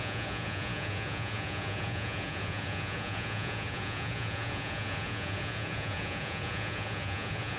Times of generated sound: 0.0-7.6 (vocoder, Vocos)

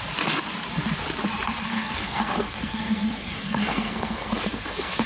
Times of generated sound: 1.6-5.1 (codec, SNAC)

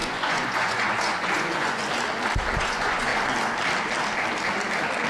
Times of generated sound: 0.0-1.8 (vocoder, Vocos); 2.6-3.1

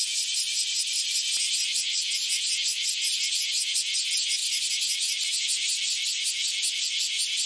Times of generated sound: 0.6-1.5 (vocoder, BigVGAN v2)

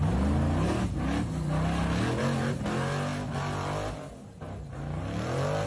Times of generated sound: none

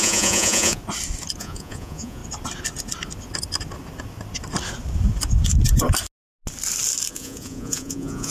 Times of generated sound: 0.0-0.8 (vocoder, Vocos); 1.4-2.2; 7.1-8.3

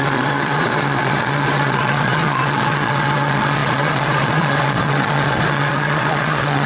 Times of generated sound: 0.0-6.7 (vocoder, Vocos)

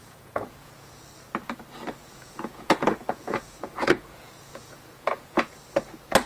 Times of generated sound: 0.0-1.0 (vocoder, Vocos); 2.0-5.6